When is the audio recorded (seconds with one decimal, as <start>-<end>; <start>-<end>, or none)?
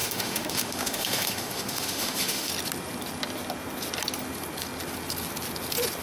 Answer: 2.5-6.0